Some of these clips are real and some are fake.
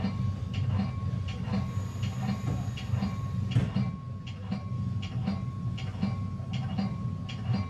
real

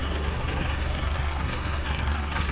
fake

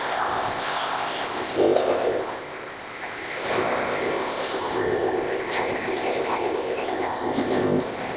fake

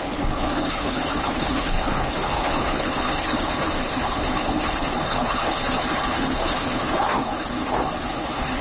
fake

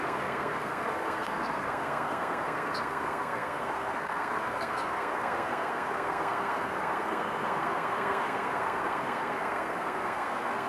fake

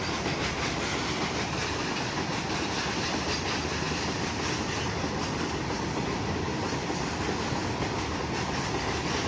real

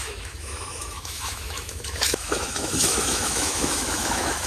fake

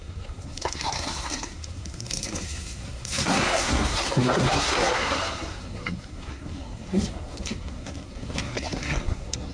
fake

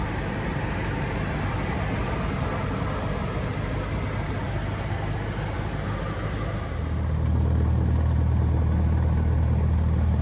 real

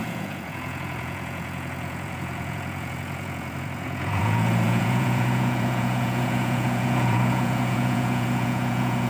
fake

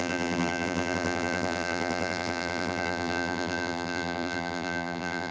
fake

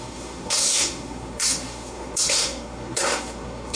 fake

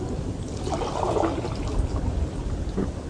real